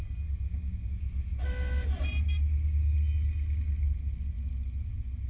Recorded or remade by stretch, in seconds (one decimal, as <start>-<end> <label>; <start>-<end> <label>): 0.0-5.3 recorded